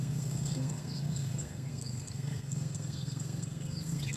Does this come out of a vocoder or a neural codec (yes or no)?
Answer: yes